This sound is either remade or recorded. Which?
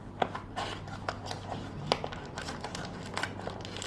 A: recorded